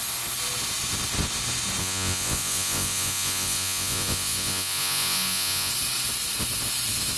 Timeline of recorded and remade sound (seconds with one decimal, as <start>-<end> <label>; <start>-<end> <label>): 0.0-1.8 recorded; 1.8-5.7 remade; 5.7-7.2 recorded